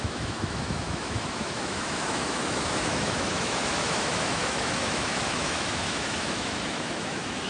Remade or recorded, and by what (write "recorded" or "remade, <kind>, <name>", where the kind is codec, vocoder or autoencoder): remade, autoencoder, DAC-VAE